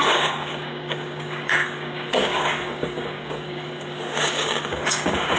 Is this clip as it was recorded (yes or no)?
no